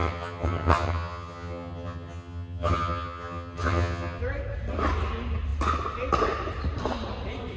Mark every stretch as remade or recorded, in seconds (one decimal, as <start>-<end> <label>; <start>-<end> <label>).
0.0-4.2 remade; 4.2-7.6 recorded